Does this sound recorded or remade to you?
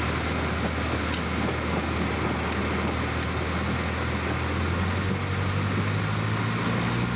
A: recorded